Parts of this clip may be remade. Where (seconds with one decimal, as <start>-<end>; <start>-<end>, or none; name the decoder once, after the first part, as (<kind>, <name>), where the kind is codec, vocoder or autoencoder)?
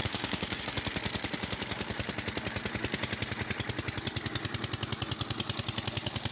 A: 0.0-0.6 (codec, DAC)